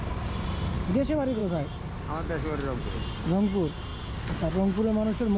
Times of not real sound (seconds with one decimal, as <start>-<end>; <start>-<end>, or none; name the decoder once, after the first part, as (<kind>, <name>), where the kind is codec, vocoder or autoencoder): none